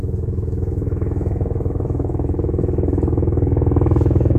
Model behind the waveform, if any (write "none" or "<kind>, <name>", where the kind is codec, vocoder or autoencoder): autoencoder, DAC-VAE